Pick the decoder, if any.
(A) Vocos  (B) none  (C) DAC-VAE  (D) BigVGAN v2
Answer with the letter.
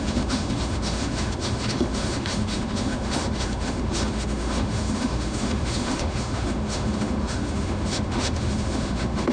C